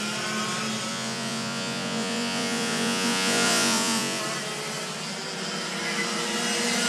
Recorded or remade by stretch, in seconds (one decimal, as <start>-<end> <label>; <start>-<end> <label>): 0.0-0.9 recorded; 0.9-4.2 remade; 4.2-6.9 recorded